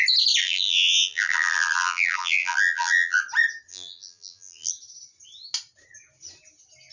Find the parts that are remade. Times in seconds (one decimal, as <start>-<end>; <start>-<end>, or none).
0.4-3.2; 3.7-4.7